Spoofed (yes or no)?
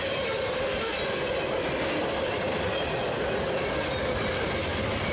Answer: no